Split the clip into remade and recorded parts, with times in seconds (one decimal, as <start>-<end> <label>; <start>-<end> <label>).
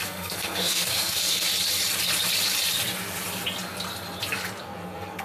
0.0-1.5 remade; 1.5-4.6 recorded; 4.6-5.2 remade